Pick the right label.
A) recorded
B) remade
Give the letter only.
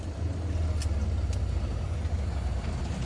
A